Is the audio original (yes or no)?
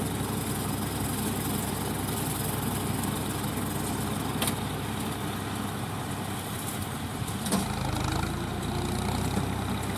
yes